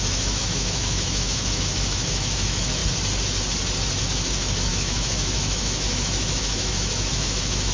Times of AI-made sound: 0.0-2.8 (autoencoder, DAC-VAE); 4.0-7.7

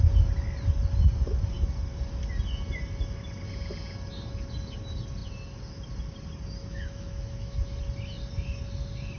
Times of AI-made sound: 6.6-7.8 (autoencoder, DAC-VAE)

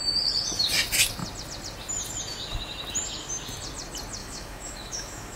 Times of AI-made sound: 4.2-5.4 (autoencoder, DAC-VAE)